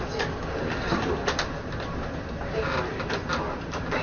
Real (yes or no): yes